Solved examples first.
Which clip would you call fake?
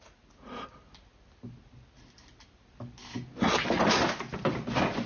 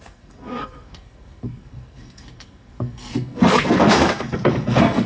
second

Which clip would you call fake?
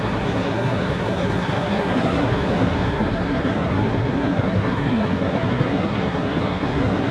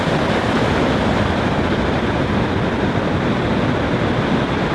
first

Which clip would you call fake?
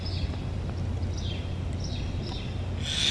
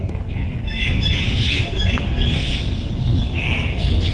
second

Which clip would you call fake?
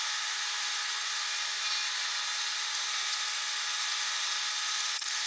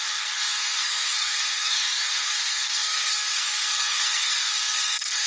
second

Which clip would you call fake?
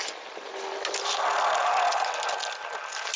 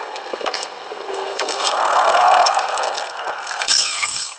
second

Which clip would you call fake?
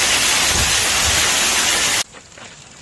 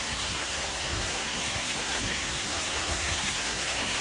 second